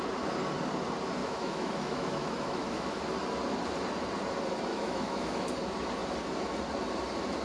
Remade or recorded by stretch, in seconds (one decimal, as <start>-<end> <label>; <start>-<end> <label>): 0.0-1.2 recorded; 1.2-3.0 remade; 3.0-4.7 recorded; 4.7-5.5 remade; 5.5-7.4 recorded